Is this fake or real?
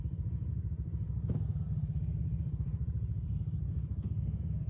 fake